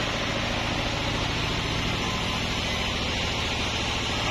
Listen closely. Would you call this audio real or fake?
real